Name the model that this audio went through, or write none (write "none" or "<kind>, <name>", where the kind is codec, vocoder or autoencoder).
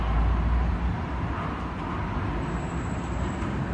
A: none